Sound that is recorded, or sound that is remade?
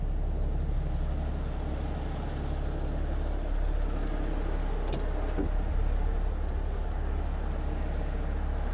recorded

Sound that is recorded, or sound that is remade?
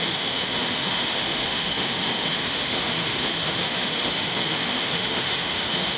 remade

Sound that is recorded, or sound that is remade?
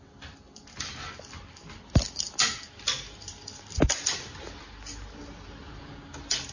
recorded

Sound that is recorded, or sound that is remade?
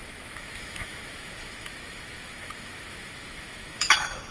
remade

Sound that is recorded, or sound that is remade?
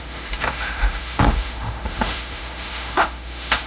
remade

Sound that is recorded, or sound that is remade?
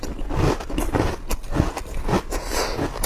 recorded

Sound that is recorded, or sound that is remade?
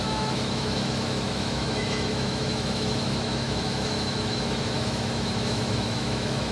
remade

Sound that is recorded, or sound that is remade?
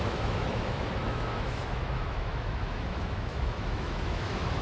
remade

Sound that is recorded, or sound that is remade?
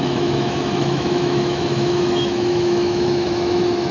remade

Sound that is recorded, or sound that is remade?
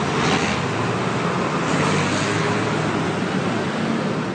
recorded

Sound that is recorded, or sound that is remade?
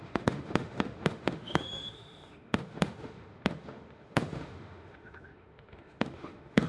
remade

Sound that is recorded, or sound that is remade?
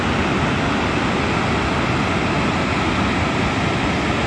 recorded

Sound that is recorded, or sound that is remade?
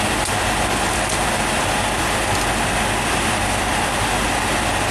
recorded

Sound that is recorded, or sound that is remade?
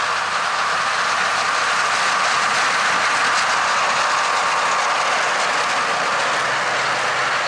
recorded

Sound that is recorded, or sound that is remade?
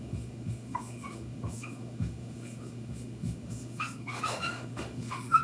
remade